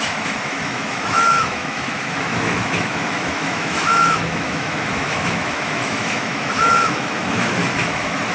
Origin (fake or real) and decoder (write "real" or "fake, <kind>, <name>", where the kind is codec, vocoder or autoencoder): fake, autoencoder, DAC-VAE